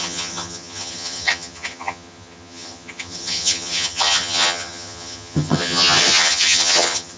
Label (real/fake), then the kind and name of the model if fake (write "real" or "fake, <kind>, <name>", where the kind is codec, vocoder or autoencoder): fake, vocoder, HiFi-GAN